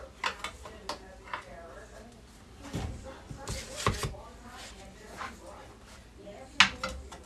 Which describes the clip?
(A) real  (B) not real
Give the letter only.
A